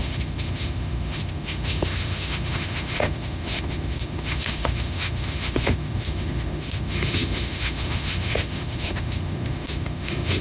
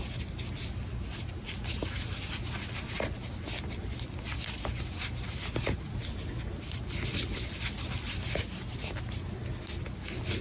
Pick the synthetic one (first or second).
first